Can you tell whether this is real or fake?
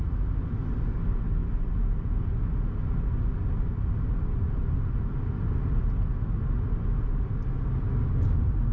real